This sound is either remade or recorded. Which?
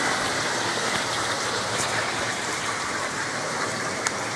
remade